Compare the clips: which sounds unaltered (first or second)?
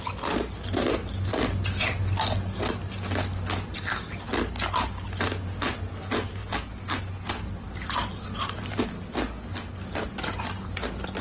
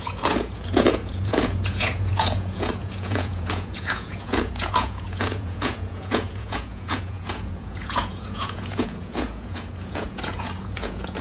first